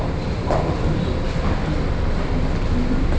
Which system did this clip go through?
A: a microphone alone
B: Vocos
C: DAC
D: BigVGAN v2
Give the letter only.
A